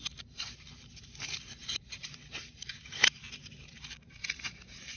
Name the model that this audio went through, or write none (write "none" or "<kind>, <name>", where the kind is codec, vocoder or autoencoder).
vocoder, BigVGAN v2